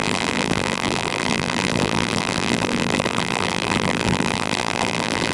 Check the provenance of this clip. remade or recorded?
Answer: remade